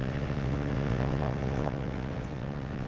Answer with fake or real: fake